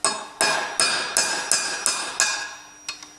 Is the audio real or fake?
real